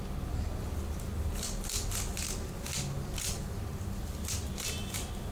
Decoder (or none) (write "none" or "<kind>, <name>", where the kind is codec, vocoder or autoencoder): none